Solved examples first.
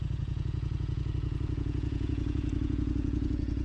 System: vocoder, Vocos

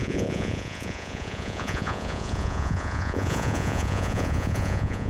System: vocoder, Vocos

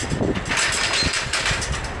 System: none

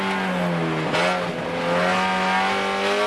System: none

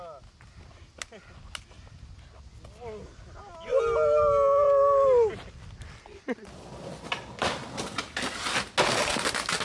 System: none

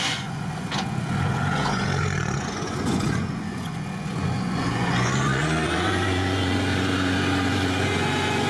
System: vocoder, Vocos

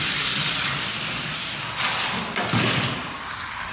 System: none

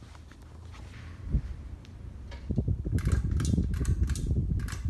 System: none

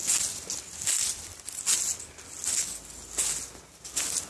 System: none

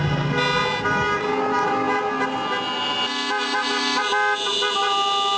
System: none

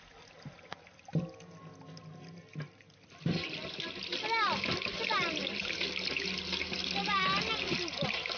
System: none